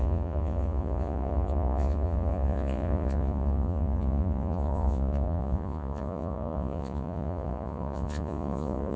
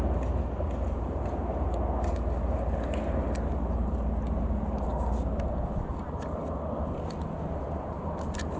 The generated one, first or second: first